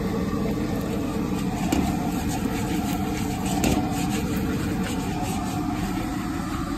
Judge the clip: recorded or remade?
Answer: recorded